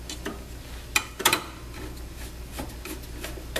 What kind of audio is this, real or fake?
real